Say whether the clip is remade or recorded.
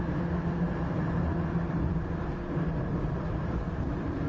remade